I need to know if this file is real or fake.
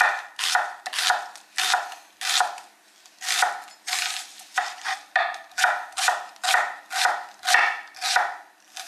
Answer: real